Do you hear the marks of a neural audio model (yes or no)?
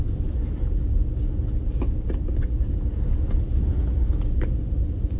no